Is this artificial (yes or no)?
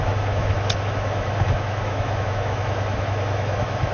yes